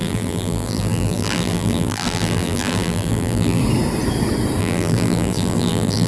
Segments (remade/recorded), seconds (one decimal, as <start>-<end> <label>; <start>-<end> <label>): 0.0-3.6 remade; 3.6-4.6 recorded; 4.6-6.1 remade